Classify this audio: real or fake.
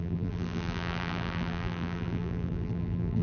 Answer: fake